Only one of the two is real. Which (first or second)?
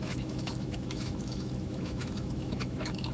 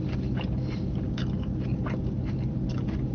second